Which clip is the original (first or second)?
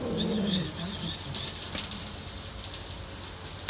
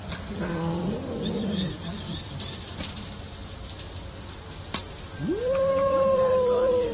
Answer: first